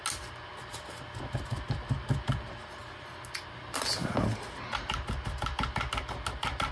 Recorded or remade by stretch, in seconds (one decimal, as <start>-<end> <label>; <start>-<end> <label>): 0.0-0.6 recorded; 0.6-2.8 remade; 2.8-3.6 recorded; 3.6-4.0 remade; 4.0-6.3 recorded; 6.3-6.7 remade